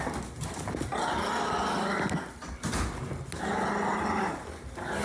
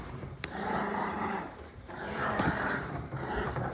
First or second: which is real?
first